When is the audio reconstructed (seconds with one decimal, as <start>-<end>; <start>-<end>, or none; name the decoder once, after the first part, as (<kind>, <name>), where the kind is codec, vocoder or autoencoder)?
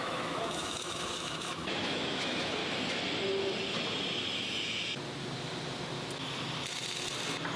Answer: 0.0-2.6 (autoencoder, DAC-VAE)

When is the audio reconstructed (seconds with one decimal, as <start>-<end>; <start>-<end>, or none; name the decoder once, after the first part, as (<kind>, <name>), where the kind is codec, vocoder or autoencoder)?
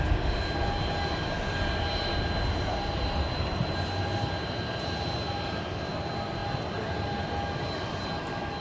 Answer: none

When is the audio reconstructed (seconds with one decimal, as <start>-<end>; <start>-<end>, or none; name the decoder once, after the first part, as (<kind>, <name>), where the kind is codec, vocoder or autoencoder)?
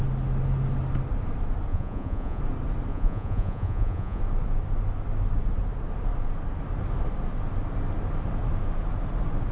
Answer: 1.7-2.4 (vocoder, Vocos); 2.9-4.2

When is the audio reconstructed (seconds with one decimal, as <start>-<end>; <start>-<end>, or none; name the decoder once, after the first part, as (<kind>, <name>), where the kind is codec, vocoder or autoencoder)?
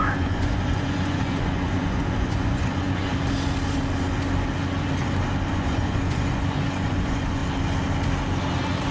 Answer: 0.0-3.1 (vocoder, Vocos); 5.5-7.4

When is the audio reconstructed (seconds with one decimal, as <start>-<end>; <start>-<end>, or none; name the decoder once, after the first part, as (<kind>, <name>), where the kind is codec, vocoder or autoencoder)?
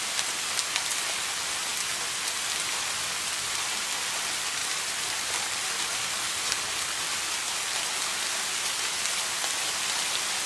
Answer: none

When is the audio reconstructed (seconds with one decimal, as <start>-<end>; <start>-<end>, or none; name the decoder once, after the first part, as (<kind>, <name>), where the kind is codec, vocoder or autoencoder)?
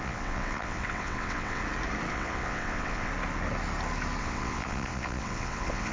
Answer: 0.0-1.6 (vocoder, WaveNeXt); 2.1-3.1; 4.2-5.9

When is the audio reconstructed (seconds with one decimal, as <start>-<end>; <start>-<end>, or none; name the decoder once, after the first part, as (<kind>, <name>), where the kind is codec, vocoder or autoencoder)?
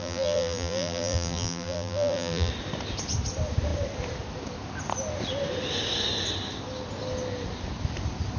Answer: 0.0-2.5 (vocoder, BigVGAN v2)